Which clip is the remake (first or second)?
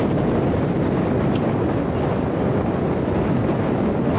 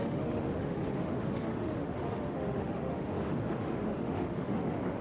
second